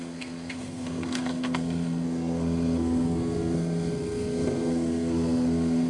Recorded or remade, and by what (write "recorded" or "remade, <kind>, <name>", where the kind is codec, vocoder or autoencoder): remade, codec, SNAC